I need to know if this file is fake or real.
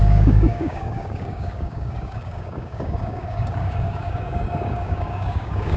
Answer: fake